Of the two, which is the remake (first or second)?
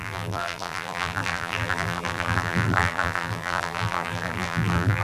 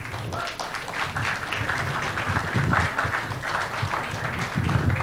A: first